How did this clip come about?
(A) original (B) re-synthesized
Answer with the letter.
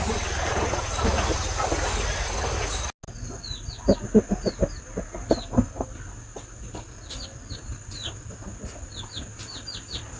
A